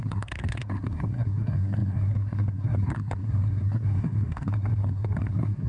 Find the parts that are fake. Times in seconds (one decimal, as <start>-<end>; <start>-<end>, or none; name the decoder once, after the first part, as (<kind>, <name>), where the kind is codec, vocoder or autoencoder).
0.0-5.7 (codec, SNAC)

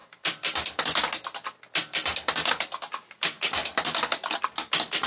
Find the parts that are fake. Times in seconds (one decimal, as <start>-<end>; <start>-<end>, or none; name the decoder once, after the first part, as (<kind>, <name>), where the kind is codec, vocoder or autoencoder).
0.0-3.6 (vocoder, BigVGAN v2); 4.4-5.1

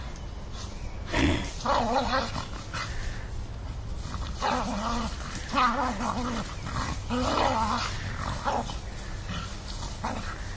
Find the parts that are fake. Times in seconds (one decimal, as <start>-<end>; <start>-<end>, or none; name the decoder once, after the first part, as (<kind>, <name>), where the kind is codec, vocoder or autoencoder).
1.5-2.2 (vocoder, BigVGAN v2); 3.6-4.2

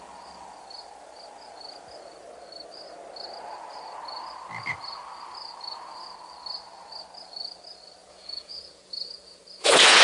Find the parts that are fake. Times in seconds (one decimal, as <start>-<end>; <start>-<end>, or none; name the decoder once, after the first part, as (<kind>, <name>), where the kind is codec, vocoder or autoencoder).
8.0-10.0 (vocoder, Vocos)

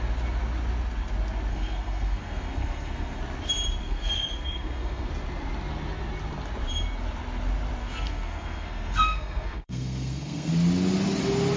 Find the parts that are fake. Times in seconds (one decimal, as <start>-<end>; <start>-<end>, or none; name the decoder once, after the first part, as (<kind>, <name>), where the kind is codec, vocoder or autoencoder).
1.5-3.2 (codec, SNAC); 3.8-5.1; 7.8-10.5